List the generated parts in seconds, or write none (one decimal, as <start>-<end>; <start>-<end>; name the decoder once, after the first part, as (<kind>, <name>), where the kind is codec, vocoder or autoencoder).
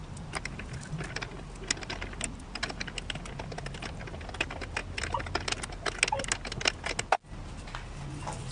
none